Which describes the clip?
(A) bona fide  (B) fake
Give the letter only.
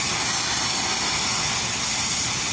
A